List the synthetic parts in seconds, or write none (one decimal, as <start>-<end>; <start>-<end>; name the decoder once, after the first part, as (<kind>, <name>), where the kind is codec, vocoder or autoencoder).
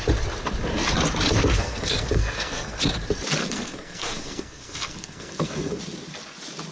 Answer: 1.5-2.8 (codec, SNAC); 3.4-5.8